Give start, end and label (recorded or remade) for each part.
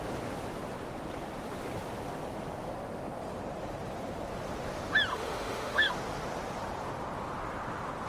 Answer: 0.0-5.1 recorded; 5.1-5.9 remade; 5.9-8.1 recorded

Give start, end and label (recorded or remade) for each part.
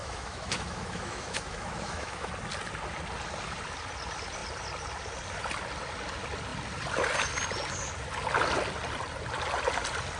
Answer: 0.0-2.3 remade; 2.3-10.2 recorded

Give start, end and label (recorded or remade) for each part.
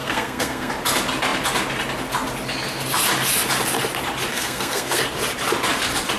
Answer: 0.0-0.7 remade; 0.7-4.3 recorded; 4.3-5.0 remade; 5.0-6.2 recorded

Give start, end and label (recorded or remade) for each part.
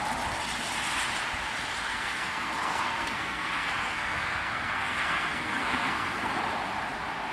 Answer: 0.0-1.9 recorded; 1.9-6.3 remade; 6.3-7.3 recorded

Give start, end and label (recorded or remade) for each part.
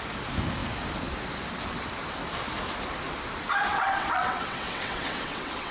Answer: 0.0-3.7 recorded; 3.7-5.7 remade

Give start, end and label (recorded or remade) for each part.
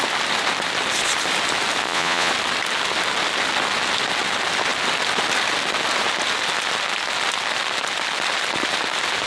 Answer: 0.0-1.8 recorded; 1.8-2.3 remade; 2.3-9.3 recorded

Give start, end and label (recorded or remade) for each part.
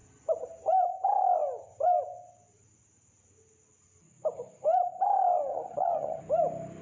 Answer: 0.0-5.5 recorded; 5.5-6.2 remade; 6.2-6.8 recorded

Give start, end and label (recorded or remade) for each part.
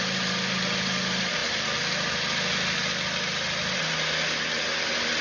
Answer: 0.0-5.2 recorded